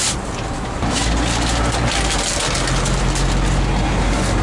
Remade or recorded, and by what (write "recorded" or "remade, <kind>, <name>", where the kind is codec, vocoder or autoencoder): recorded